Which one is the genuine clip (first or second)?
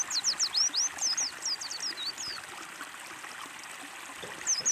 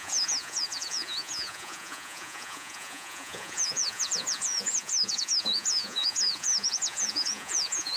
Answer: first